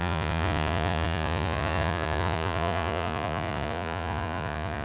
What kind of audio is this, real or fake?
fake